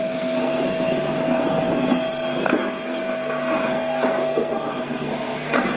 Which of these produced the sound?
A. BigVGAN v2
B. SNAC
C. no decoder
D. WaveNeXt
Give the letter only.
B